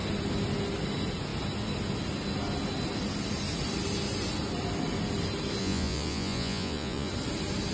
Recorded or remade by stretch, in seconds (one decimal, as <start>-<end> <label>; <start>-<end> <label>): 0.0-5.6 recorded; 5.6-7.1 remade; 7.1-7.7 recorded